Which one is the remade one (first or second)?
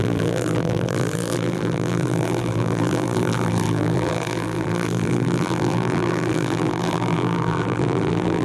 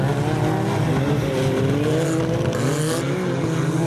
first